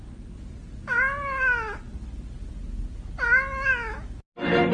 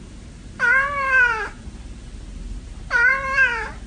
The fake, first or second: second